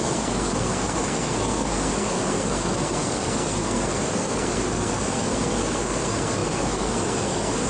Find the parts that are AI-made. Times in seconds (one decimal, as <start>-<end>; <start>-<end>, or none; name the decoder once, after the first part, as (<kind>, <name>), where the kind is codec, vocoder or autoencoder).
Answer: 0.0-7.7 (codec, SNAC)